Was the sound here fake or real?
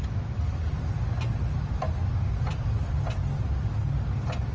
real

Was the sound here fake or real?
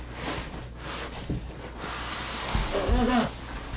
real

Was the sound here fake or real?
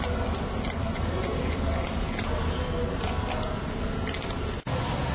real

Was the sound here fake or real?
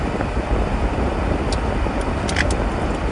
real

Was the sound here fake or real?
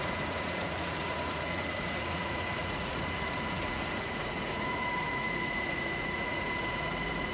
fake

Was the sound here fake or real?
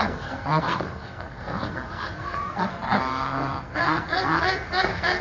fake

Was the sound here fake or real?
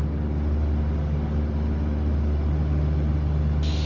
real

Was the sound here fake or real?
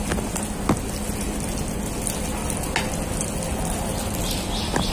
real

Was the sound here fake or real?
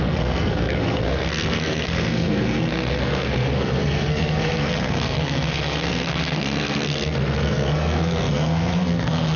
fake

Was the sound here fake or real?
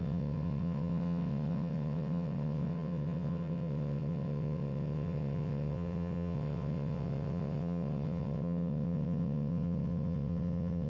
fake